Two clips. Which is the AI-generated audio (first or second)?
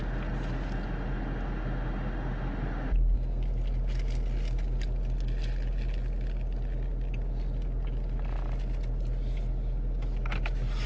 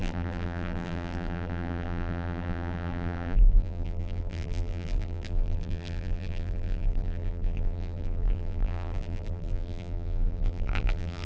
second